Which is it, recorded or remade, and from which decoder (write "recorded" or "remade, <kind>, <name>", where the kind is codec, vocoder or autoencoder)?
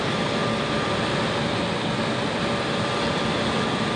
recorded